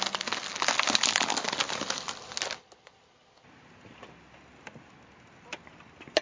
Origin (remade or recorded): recorded